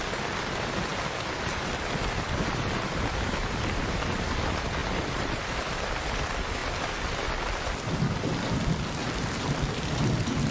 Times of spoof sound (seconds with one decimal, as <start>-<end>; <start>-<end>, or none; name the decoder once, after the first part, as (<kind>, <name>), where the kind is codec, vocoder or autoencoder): 0.0-0.9 (vocoder, BigVGAN v2); 2.0-6.6; 7.6-10.5